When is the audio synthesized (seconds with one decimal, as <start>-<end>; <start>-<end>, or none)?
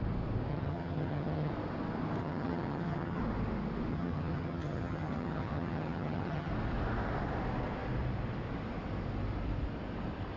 0.5-1.5; 2.2-3.2; 3.9-6.5